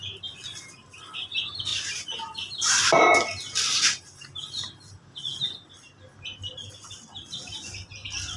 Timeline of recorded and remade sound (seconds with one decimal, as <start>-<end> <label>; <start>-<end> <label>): 0.0-8.4 recorded